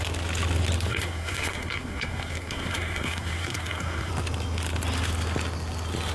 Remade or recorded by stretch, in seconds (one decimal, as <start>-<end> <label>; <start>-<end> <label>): 0.0-0.9 recorded; 0.9-4.1 remade; 4.1-6.1 recorded